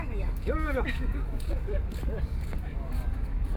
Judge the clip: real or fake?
fake